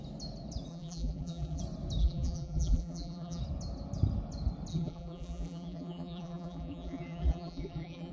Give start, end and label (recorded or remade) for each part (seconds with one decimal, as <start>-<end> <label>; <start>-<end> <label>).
0.0-0.7 recorded; 0.7-1.6 remade; 1.6-2.0 recorded; 2.0-3.4 remade; 3.4-4.7 recorded; 4.7-8.1 remade